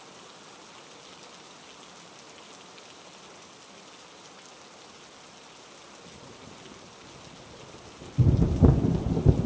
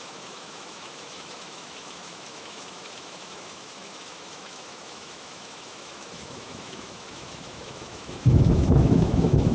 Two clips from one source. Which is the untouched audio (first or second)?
first